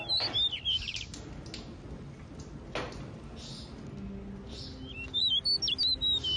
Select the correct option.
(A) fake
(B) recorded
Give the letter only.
B